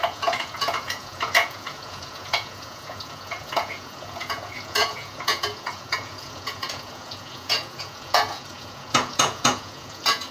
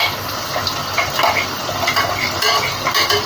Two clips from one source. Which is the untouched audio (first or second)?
second